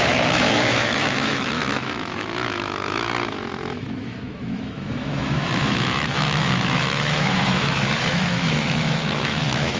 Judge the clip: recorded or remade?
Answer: remade